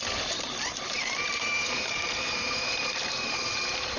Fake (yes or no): yes